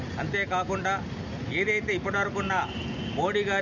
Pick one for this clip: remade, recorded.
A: recorded